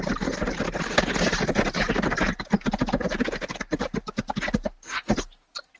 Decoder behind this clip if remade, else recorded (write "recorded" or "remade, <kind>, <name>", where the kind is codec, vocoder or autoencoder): recorded